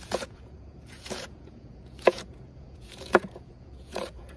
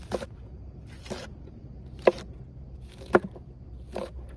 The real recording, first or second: second